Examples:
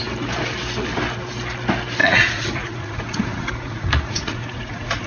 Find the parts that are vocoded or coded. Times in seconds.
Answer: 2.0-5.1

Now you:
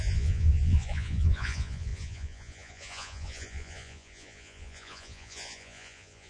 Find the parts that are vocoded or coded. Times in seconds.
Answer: 0.0-6.3

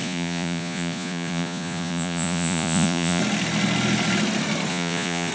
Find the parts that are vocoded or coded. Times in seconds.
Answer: 0.0-3.2; 4.7-5.3

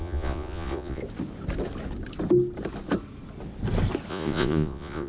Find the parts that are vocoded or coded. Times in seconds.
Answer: 0.0-1.0; 4.1-5.1

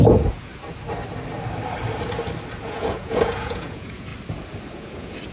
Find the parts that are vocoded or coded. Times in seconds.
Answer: 0.0-0.5; 2.6-4.1; 4.7-5.3

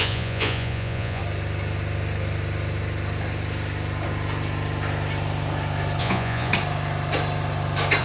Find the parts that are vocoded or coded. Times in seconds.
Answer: 0.0-1.2; 6.0-6.5